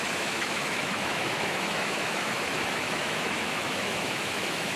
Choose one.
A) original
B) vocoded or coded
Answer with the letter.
B